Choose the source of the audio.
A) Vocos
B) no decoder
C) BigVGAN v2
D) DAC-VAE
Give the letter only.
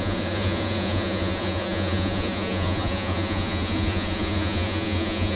A